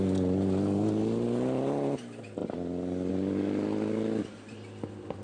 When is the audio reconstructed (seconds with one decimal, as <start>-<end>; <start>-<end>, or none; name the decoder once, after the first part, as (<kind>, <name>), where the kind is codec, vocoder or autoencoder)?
none